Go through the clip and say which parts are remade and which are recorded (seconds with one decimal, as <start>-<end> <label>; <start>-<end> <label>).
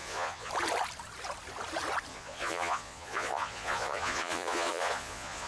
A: 0.0-0.5 remade; 0.5-2.1 recorded; 2.1-5.5 remade